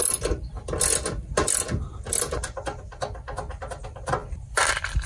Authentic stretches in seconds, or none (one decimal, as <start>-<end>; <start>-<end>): 0.0-4.2